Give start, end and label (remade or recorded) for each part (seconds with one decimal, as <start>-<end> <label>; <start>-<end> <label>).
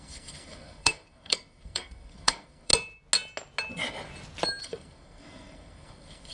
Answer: 0.0-2.7 remade; 2.7-4.6 recorded; 4.6-6.3 remade